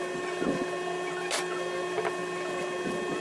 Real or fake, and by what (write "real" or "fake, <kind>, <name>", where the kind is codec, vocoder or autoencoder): real